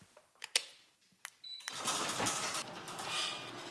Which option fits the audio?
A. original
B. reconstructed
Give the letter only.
A